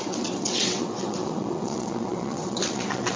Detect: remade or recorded remade